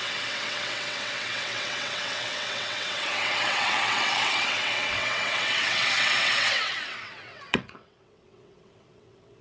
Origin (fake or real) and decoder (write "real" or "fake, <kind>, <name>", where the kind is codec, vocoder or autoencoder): fake, vocoder, WaveNeXt